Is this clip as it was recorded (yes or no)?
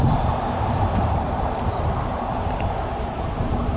no